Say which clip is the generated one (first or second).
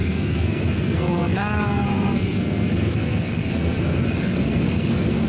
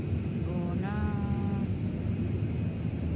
first